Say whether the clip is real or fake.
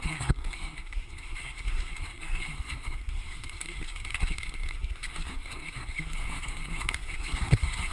fake